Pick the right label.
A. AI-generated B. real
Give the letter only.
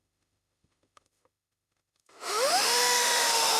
A